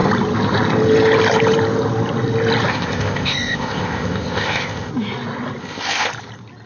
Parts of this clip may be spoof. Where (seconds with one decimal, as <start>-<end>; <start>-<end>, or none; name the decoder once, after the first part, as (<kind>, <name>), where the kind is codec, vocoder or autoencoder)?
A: 2.7-4.9 (codec, ZipCodec); 5.6-6.1